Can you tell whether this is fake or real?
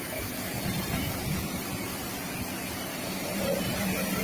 fake